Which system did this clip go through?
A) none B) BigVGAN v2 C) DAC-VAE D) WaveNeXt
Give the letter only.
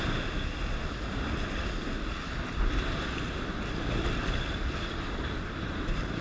A